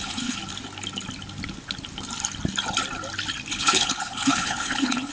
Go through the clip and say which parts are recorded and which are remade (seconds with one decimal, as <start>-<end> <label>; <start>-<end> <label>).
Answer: 0.0-0.4 remade; 0.4-3.5 recorded; 3.5-5.1 remade